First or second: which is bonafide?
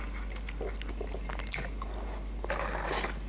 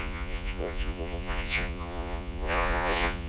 first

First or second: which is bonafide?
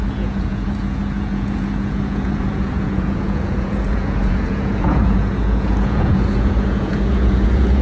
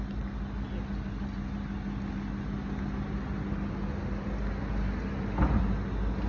second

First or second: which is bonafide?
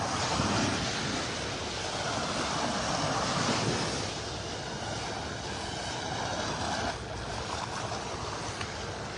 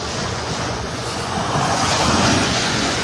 first